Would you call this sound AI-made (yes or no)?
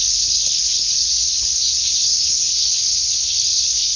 yes